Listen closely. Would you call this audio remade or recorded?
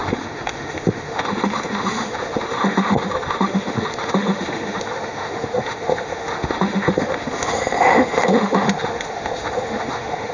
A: remade